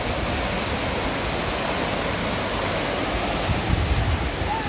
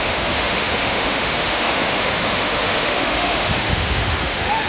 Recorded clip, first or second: first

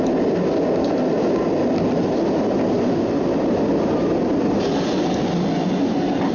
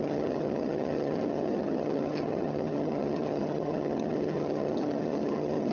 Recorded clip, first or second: first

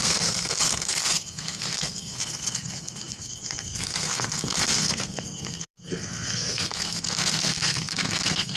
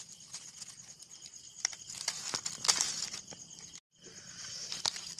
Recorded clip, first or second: second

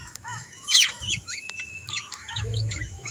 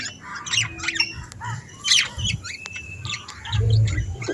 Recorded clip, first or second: second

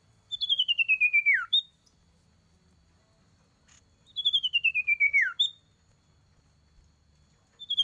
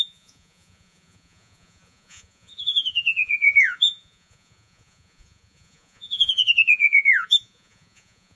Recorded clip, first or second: first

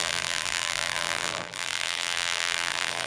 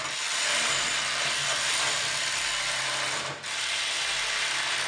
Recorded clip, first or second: second